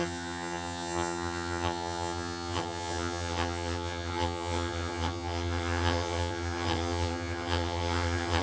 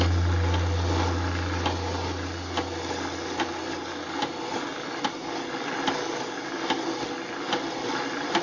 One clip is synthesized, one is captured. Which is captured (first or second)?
second